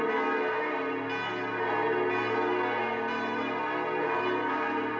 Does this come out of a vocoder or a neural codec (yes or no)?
no